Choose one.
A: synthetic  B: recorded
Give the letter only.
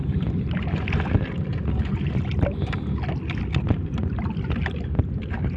B